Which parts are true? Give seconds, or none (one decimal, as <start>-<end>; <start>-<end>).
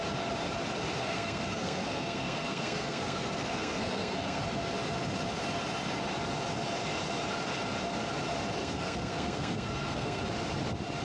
0.0-1.0; 4.4-8.6; 10.2-11.0